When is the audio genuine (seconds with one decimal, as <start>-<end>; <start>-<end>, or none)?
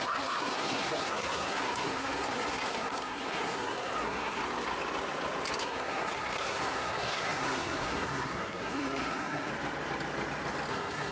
4.4-5.6; 9.5-10.7